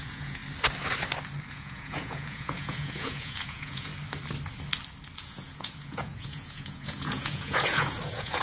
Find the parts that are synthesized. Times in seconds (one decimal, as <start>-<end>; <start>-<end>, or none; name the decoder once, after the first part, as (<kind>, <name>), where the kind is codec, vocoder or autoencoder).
0.0-0.4 (vocoder, Vocos); 1.5-3.9; 5.2-8.4